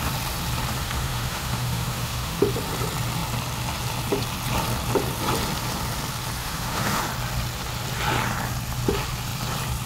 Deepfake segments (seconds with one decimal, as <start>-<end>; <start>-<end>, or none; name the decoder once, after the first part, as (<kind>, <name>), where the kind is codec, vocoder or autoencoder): 0.8-2.4 (autoencoder, DAC-VAE); 6.4-7.0

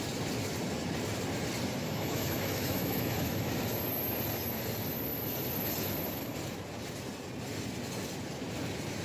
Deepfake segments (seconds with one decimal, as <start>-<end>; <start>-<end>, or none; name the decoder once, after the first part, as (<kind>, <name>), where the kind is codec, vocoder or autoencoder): 1.8-3.5 (autoencoder, DAC-VAE)

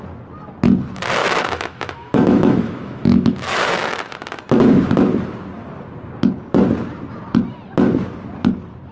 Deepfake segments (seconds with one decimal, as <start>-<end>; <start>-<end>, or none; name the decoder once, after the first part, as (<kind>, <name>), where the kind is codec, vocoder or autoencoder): 1.2-4.1 (autoencoder, DAC-VAE)

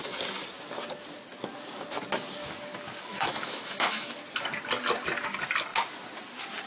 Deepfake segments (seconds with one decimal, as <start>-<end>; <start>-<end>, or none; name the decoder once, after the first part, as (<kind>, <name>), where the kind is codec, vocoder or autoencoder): 3.1-4.2 (autoencoder, DAC-VAE)

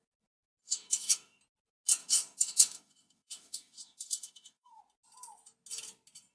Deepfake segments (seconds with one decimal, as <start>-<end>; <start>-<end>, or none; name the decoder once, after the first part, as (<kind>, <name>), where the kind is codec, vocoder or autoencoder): 0.6-1.4 (autoencoder, DAC-VAE); 2.0-4.8

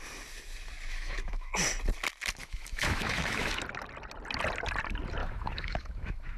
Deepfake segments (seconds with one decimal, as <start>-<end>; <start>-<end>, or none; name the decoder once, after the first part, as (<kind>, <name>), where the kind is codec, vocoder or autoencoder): 0.9-1.5 (autoencoder, DAC-VAE); 2.4-3.6; 5.2-6.4

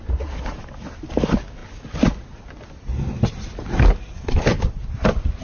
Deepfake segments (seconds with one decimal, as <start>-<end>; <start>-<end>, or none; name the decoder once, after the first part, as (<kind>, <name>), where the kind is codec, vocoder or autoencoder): none

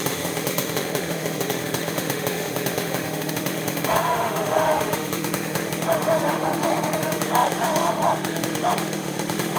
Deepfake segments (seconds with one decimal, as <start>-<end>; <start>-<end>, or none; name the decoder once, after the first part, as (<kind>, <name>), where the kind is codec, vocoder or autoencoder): 0.0-9.6 (autoencoder, DAC-VAE)